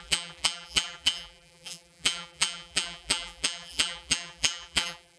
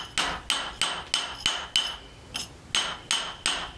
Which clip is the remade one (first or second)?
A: first